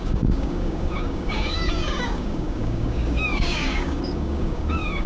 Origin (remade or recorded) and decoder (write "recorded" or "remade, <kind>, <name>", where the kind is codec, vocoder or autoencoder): remade, codec, DAC